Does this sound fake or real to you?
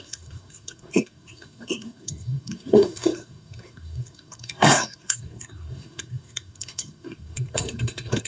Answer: fake